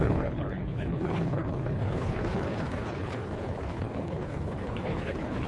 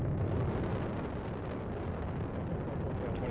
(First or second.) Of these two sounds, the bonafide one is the second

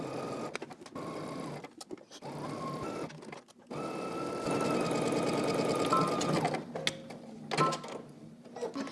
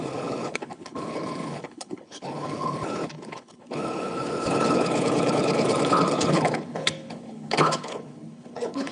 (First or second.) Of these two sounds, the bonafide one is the first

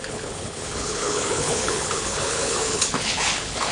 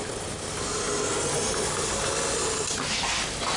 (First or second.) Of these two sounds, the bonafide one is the second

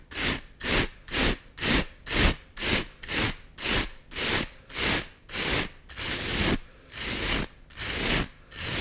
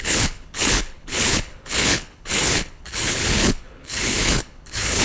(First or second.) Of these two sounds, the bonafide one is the first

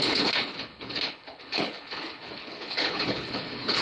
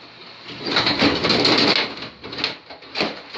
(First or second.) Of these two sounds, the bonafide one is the second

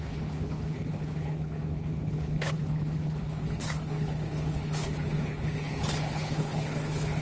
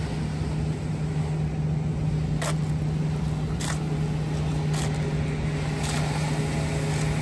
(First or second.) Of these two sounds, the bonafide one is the second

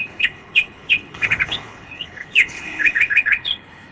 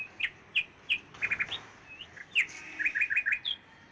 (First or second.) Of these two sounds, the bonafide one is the second